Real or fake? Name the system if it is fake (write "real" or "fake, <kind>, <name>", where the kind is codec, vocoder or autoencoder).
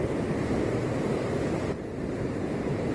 real